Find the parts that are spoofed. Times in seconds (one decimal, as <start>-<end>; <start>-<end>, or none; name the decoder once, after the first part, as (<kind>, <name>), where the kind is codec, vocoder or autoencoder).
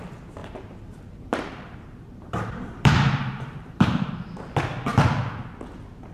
0.4-4.1 (vocoder, BigVGAN v2)